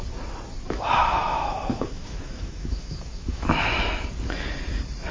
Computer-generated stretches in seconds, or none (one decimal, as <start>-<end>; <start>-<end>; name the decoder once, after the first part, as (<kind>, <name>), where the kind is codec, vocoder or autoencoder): 1.0-4.1 (autoencoder, DAC-VAE)